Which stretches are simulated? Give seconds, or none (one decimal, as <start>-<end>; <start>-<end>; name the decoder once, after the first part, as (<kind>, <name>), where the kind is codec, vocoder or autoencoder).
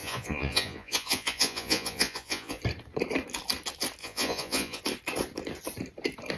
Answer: 0.0-2.6 (vocoder, Vocos); 4.0-4.8